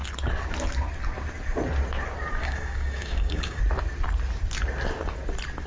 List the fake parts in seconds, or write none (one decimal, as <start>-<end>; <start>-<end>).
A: 2.4-3.6